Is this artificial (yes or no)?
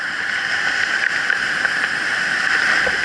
no